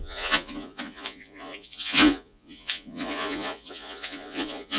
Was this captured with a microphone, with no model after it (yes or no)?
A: no